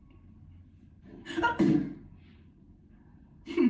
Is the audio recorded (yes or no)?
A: yes